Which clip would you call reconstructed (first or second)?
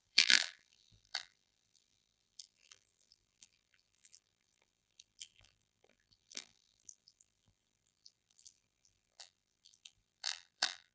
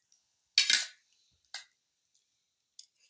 first